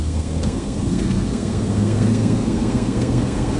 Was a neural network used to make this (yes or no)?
yes